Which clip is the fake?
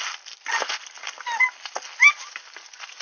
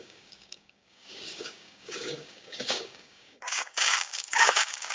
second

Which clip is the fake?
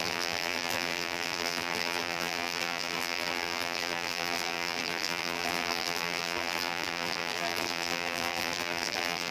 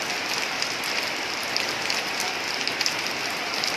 first